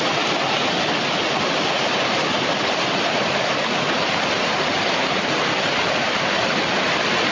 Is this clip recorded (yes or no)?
yes